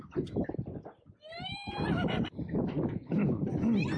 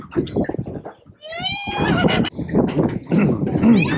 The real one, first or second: second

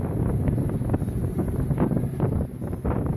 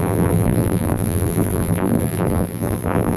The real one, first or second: first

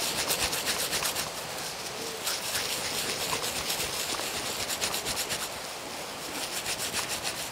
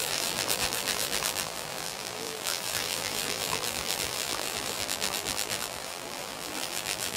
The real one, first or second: first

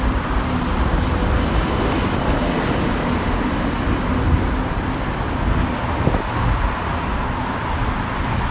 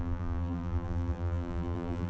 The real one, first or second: first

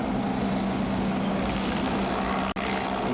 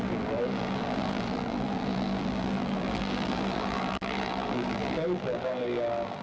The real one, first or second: first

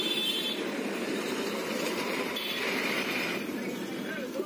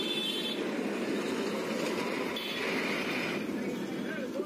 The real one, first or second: second